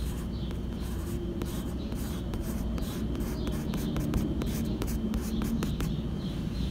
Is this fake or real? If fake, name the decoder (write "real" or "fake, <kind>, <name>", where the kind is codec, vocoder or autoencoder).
fake, vocoder, BigVGAN v2